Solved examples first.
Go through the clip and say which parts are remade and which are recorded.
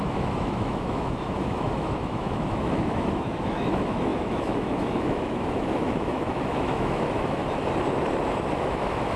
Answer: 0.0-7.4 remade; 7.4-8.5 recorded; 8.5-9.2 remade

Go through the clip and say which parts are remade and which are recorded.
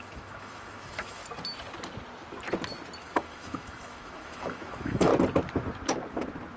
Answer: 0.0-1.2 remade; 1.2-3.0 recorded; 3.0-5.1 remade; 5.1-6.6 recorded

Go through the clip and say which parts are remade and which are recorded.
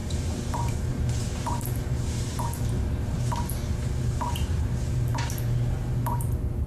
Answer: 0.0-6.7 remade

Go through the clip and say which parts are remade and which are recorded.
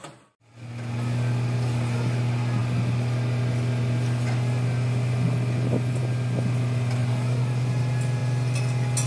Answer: 0.0-9.1 recorded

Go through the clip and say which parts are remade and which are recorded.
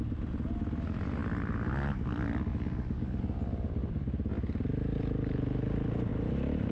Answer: 0.0-2.5 recorded; 2.5-3.2 remade; 3.2-6.7 recorded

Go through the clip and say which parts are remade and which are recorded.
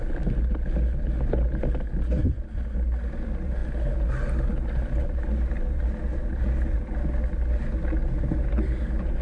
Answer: 0.0-9.2 recorded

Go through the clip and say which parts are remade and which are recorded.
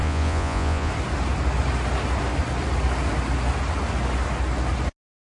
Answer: 0.0-0.9 remade; 0.9-5.2 recorded